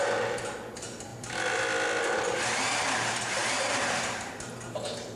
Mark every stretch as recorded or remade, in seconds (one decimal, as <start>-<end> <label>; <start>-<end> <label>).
0.0-1.1 recorded; 1.1-2.4 remade; 2.4-3.4 recorded; 3.4-4.2 remade; 4.2-5.2 recorded